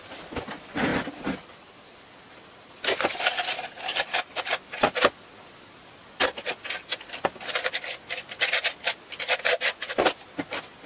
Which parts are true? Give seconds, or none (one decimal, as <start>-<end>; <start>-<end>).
0.0-10.9